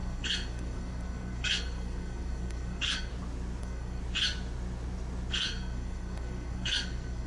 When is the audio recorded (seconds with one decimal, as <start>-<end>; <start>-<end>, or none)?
3.1-3.6; 4.0-5.3